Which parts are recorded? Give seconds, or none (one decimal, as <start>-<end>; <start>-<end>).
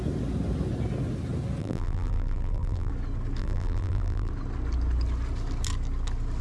0.0-1.6; 2.9-3.4; 4.3-6.4